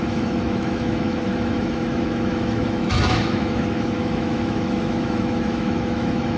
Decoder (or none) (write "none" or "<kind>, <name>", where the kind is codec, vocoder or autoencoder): autoencoder, DAC-VAE